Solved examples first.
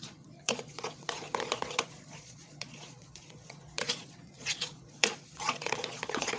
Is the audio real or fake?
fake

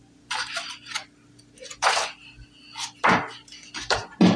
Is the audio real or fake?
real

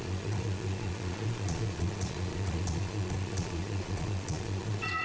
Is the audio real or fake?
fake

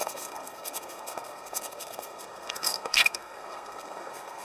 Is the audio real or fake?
fake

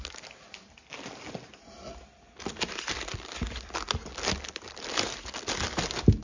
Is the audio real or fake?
real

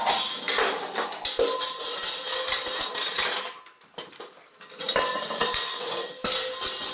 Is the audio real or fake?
real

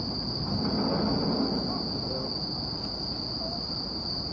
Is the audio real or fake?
real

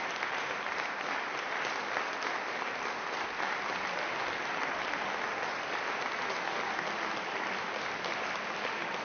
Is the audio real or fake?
real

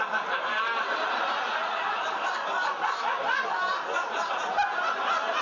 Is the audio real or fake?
real